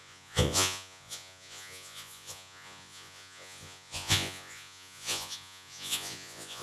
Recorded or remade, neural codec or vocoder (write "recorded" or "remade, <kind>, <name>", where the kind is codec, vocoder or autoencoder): remade, vocoder, Vocos